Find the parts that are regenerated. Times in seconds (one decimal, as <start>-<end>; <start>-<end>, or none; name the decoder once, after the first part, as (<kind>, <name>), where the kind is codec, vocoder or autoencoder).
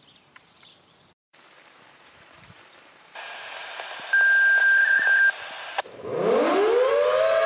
0.0-3.6 (vocoder, BigVGAN v2); 4.6-6.1; 6.9-7.5